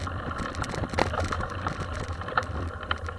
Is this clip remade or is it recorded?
remade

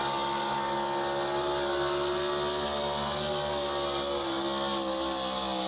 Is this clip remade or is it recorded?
recorded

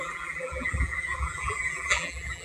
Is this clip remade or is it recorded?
remade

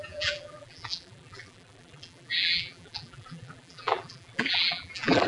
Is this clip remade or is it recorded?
remade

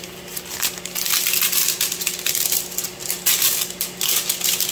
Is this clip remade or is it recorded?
recorded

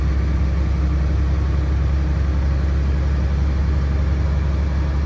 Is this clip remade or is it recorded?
recorded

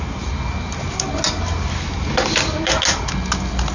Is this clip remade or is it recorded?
recorded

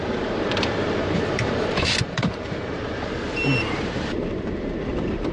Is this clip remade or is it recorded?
remade